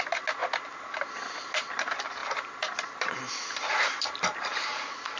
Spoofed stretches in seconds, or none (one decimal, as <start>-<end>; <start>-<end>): 0.4-1.3; 2.2-4.8